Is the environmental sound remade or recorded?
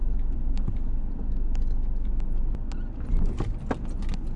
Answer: recorded